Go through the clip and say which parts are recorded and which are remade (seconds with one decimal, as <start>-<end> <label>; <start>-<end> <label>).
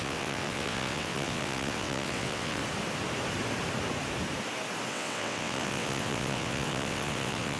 0.0-2.6 remade; 2.6-4.9 recorded; 4.9-7.6 remade